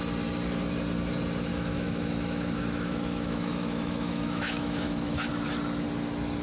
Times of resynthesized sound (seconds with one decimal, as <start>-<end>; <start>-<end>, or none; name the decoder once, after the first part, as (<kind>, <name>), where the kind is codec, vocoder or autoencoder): 1.5-5.3 (autoencoder, DAC-VAE)